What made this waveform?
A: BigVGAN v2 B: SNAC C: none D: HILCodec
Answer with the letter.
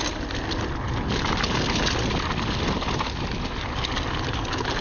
C